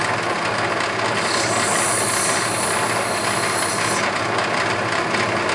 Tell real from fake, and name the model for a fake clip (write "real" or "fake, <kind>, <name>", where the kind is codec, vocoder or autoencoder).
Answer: real